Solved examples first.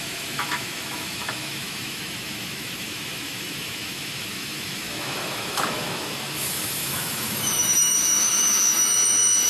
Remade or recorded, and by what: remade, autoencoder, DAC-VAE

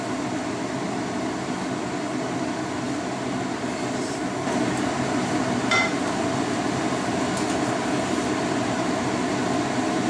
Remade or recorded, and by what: recorded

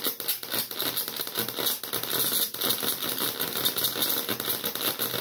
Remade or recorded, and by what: recorded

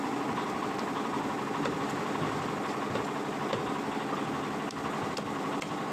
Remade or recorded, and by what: recorded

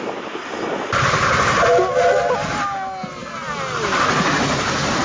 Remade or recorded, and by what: recorded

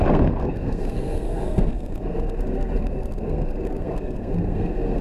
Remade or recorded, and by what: remade, codec, SNAC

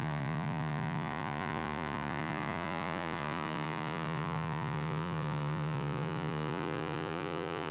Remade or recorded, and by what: remade, vocoder, Vocos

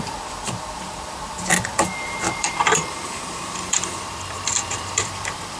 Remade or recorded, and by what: remade, vocoder, BigVGAN v2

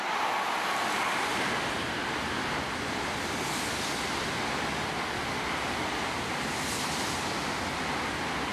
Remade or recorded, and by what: recorded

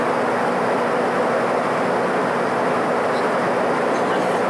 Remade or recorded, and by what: recorded